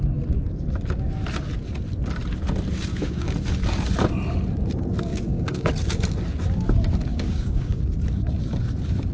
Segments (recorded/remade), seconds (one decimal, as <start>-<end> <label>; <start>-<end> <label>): 0.0-2.9 recorded; 2.9-3.5 remade; 3.5-5.1 recorded; 5.1-5.7 remade; 5.7-7.1 recorded; 7.1-7.8 remade; 7.8-9.1 recorded